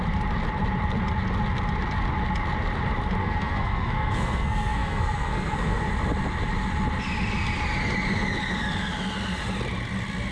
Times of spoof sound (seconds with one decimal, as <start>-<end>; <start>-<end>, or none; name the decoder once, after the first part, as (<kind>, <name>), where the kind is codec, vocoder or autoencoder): 3.2-5.9 (codec, SNAC)